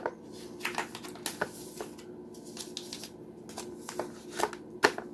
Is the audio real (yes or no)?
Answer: yes